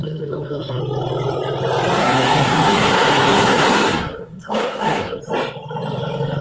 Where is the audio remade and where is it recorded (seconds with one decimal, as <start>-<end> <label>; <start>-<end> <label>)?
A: 0.0-0.8 remade; 0.8-2.0 recorded; 2.0-5.2 remade; 5.2-6.4 recorded